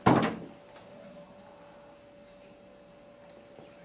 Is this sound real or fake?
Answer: real